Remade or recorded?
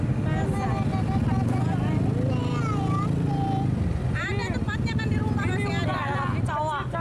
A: recorded